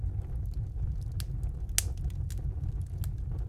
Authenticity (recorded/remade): recorded